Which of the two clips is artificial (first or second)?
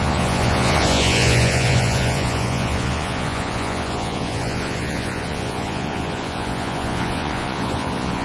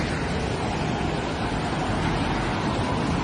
first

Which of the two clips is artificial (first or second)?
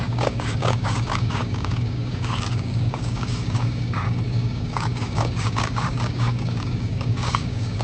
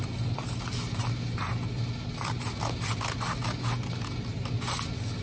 first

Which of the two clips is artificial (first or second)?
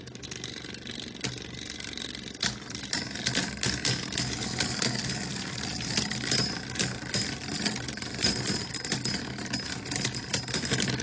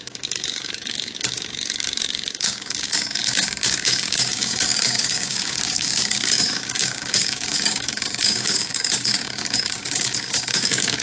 second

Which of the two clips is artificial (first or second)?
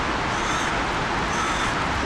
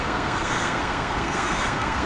second